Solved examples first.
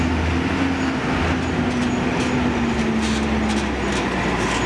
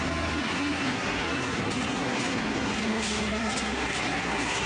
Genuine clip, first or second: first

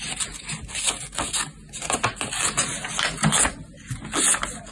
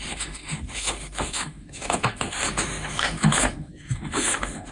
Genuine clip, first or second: first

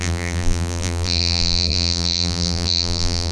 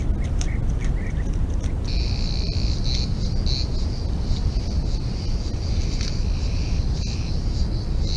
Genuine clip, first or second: second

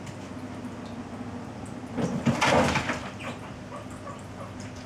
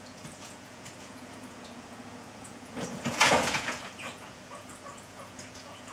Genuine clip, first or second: first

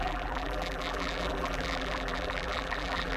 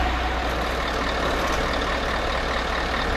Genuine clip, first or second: second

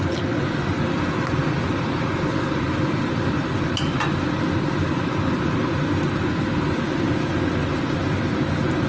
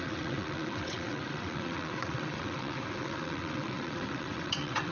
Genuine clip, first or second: first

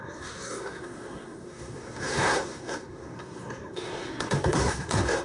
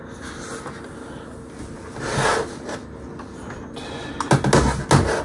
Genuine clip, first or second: second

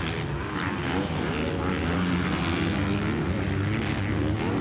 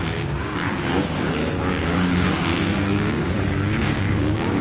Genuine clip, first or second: first